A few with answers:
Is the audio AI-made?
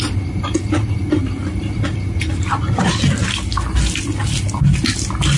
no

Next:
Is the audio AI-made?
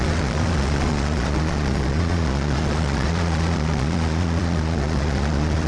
yes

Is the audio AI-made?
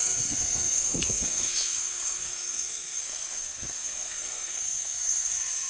yes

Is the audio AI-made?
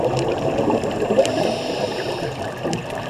no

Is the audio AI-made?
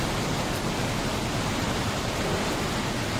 yes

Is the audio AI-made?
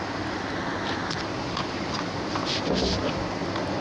no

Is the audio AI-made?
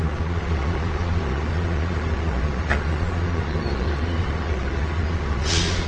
yes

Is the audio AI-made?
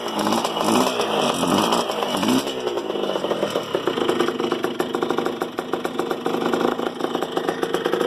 no